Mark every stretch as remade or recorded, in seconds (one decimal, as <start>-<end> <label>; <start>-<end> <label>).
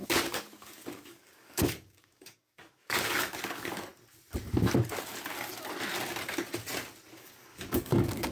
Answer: 0.0-3.9 remade; 3.9-7.1 recorded; 7.1-8.3 remade